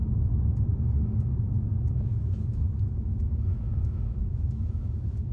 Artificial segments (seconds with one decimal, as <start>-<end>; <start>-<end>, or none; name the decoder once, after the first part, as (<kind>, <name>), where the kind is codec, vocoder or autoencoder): 1.2-5.3 (autoencoder, DAC-VAE)